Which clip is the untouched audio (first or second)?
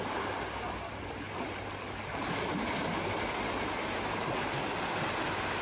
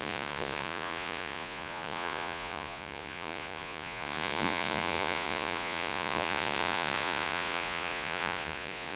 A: first